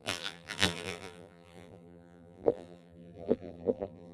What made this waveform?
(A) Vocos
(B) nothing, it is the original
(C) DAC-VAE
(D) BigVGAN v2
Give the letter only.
D